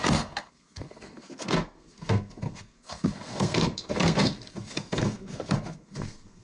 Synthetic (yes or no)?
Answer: yes